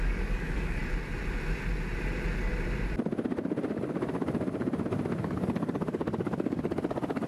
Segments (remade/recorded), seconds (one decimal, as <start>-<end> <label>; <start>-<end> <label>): 0.0-0.8 remade; 0.8-5.2 recorded; 5.2-7.3 remade

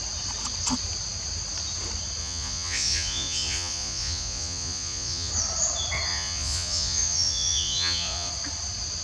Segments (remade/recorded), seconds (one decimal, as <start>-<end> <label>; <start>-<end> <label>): 0.0-2.2 recorded; 2.2-5.3 remade; 5.3-6.1 recorded; 6.1-8.3 remade; 8.3-9.0 recorded